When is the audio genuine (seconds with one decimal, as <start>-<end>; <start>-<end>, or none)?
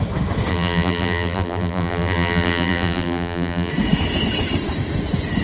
0.0-0.5; 3.7-5.4